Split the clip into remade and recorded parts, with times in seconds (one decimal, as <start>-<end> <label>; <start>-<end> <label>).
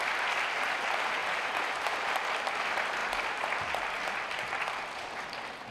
0.0-1.2 recorded; 1.2-2.0 remade; 2.0-5.7 recorded